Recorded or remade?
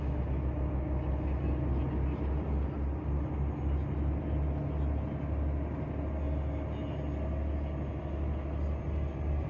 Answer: recorded